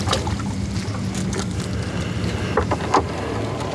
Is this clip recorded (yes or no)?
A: yes